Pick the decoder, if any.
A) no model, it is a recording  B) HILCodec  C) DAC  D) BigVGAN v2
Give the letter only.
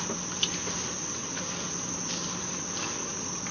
A